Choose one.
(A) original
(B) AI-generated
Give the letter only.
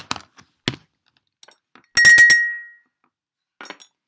A